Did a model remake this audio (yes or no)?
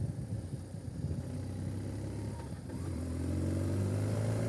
no